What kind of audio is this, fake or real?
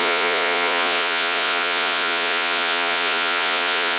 fake